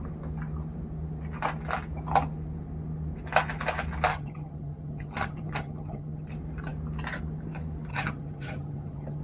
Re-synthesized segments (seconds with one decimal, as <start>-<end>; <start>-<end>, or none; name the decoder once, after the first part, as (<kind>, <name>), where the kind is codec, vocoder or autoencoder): 4.1-6.3 (vocoder, HiFi-GAN); 7.9-9.2